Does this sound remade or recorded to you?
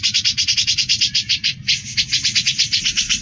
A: remade